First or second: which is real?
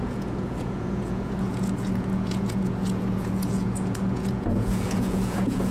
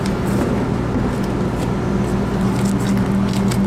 second